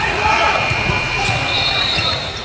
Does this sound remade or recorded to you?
remade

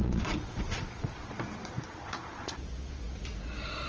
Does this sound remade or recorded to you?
remade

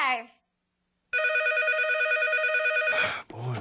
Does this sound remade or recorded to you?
recorded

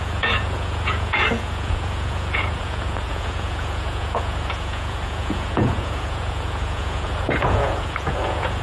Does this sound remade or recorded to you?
remade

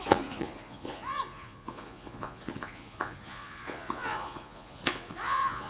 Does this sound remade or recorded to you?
remade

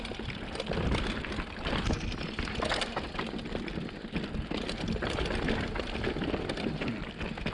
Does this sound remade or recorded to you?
recorded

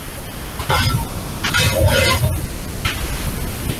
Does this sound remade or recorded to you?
recorded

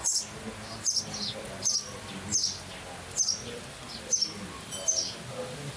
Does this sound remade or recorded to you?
recorded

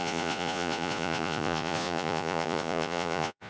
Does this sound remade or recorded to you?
remade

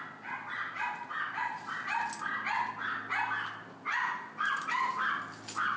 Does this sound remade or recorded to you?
recorded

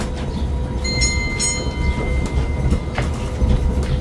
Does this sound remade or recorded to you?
recorded